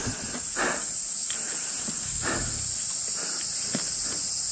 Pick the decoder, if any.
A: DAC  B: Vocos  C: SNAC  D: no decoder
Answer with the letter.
D